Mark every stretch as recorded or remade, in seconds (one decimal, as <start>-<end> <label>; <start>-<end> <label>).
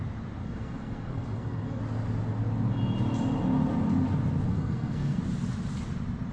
0.0-0.4 recorded; 0.4-1.8 remade; 1.8-4.5 recorded; 4.5-5.2 remade; 5.2-6.3 recorded